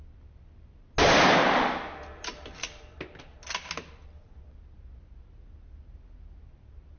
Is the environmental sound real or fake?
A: real